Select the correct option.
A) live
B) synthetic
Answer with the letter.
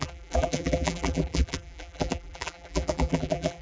B